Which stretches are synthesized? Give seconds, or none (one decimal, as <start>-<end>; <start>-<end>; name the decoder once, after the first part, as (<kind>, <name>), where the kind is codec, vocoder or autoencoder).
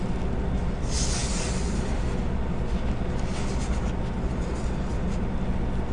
none